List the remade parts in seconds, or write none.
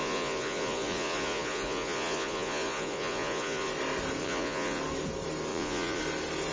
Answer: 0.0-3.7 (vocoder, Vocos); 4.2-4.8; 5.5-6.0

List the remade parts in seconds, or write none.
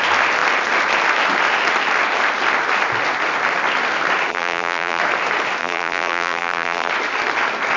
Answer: 4.3-5.0 (vocoder, BigVGAN v2); 5.6-6.9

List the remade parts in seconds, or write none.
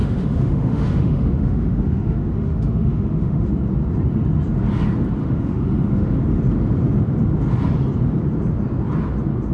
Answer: 0.0-3.5 (autoencoder, DAC-VAE); 5.2-6.4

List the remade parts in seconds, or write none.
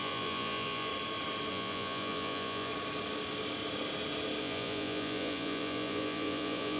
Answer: 0.0-0.9 (vocoder, Vocos); 1.5-2.7; 4.4-6.8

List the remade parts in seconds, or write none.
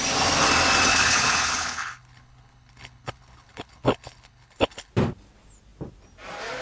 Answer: 0.9-4.9 (codec, HILCodec)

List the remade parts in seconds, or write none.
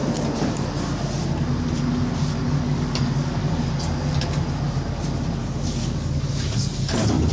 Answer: 2.4-3.7 (codec, DAC); 5.4-7.3